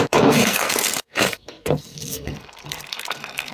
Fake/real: fake